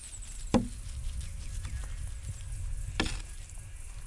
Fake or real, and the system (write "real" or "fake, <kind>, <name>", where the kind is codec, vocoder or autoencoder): real